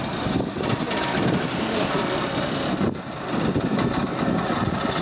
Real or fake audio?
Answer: real